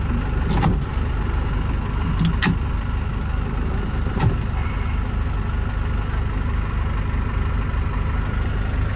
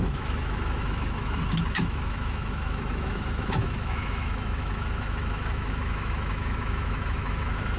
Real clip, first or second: first